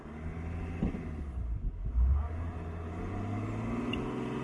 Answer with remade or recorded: recorded